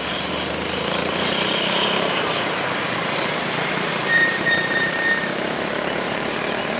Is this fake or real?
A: fake